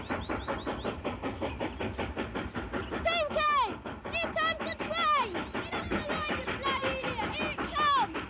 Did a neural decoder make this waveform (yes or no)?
no